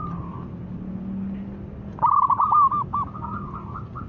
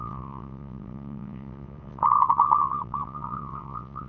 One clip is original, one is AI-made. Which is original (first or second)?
first